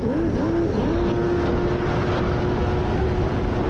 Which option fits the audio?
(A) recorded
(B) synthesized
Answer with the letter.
A